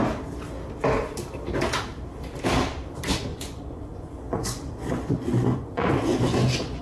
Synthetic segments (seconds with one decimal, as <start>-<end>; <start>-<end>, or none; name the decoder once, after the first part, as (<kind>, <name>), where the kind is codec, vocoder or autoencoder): 3.3-6.8 (vocoder, Vocos)